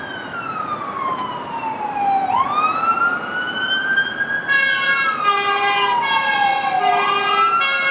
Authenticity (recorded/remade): recorded